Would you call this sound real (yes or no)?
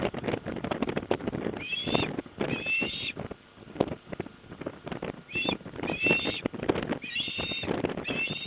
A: yes